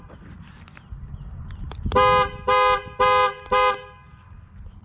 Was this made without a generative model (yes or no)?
yes